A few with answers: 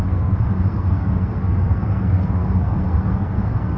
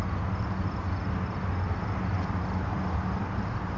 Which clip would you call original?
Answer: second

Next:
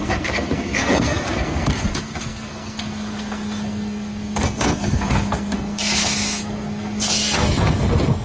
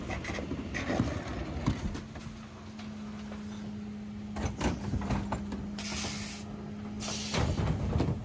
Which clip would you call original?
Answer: second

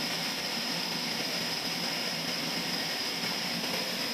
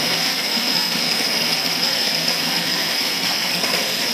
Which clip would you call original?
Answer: first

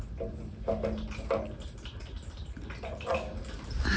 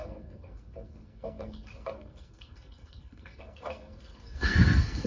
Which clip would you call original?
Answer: first